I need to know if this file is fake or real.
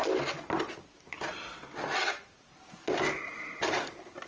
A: real